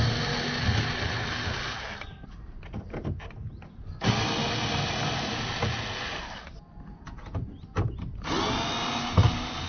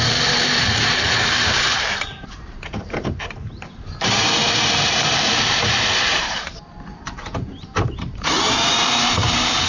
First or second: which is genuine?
first